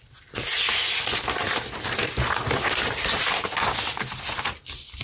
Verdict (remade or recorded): recorded